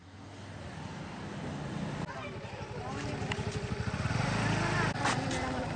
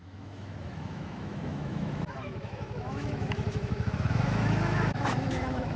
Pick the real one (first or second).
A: first